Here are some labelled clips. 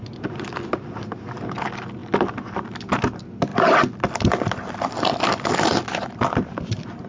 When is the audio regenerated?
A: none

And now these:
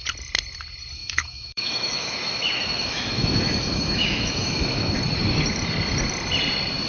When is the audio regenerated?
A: 1.0-5.0

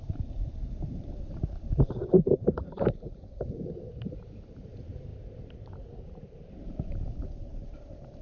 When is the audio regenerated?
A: 0.0-8.2

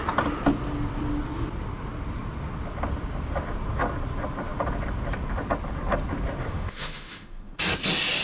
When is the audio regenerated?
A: 6.4-7.6

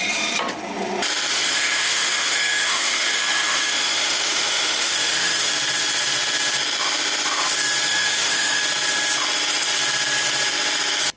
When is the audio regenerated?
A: 1.3-5.5; 7.9-8.6

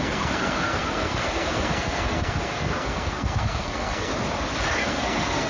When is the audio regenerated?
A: 0.0-4.1; 4.7-5.5

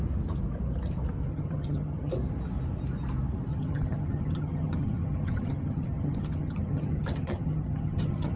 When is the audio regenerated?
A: 1.3-2.1; 3.5-8.4

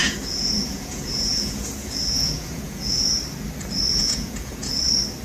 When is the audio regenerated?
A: 0.0-3.1; 3.9-4.8